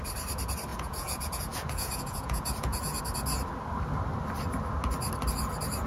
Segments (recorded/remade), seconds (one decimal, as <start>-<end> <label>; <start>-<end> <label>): 0.0-0.7 recorded; 0.7-3.0 remade; 3.0-5.9 recorded